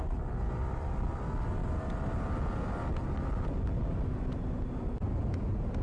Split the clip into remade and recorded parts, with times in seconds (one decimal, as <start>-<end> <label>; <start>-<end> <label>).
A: 0.0-5.8 recorded